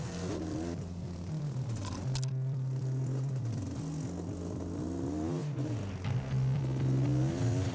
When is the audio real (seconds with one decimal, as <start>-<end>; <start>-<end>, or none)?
0.0-7.7